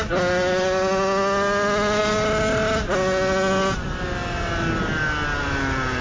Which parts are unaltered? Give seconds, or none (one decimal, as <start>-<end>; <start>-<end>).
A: 0.0-6.0